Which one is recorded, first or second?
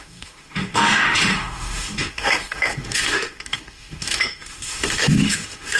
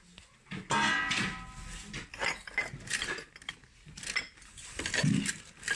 second